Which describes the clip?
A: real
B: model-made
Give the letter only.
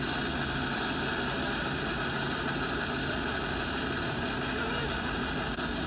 A